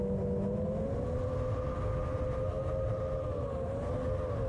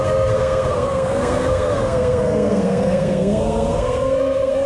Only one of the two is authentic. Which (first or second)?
first